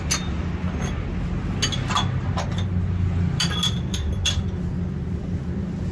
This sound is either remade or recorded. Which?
recorded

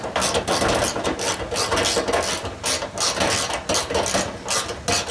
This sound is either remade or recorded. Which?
recorded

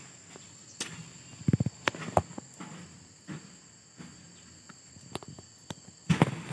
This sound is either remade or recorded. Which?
recorded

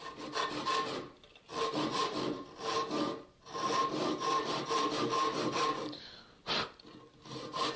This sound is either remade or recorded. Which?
recorded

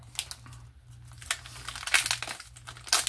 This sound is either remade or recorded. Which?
recorded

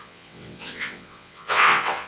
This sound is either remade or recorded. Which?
remade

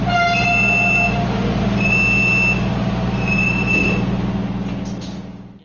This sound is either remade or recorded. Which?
recorded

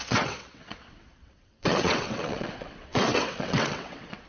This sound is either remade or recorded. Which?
remade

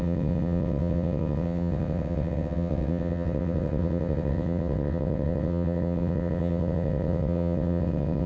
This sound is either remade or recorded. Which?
remade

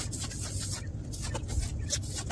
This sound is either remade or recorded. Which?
recorded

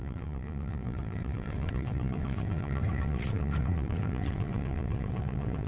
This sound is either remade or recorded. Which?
remade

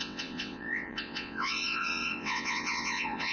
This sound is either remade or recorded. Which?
remade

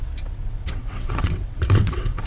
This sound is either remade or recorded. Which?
remade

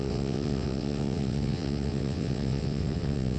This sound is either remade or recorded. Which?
remade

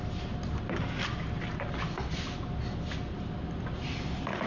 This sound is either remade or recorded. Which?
recorded